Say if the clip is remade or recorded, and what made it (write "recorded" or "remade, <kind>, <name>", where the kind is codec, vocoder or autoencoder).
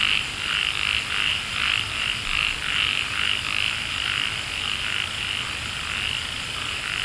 recorded